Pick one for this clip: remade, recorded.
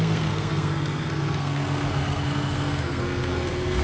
remade